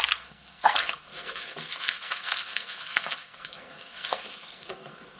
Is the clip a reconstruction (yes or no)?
yes